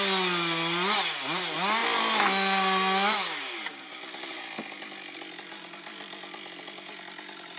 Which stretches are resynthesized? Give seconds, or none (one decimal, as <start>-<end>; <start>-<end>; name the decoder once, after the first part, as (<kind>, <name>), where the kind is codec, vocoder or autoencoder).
none